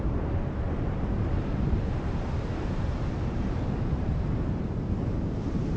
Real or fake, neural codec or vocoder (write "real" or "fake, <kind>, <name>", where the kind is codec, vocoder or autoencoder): fake, vocoder, BigVGAN v2